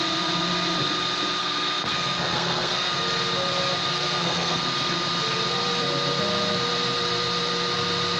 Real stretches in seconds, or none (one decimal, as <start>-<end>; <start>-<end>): 0.0-1.4; 2.9-3.9; 4.6-8.2